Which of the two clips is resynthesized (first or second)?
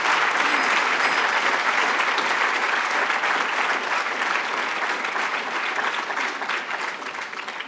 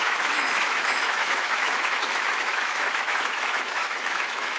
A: second